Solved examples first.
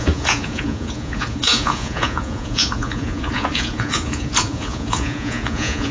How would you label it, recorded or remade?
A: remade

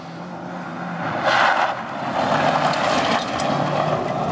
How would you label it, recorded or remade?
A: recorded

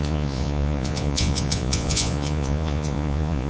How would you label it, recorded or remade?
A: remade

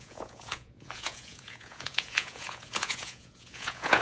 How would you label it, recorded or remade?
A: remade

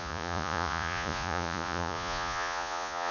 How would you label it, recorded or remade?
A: remade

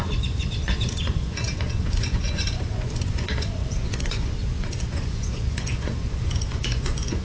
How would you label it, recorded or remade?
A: remade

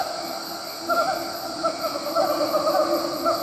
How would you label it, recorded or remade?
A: recorded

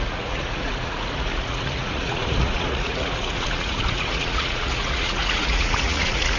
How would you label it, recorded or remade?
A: remade